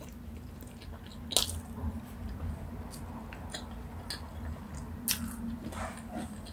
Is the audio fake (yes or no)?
no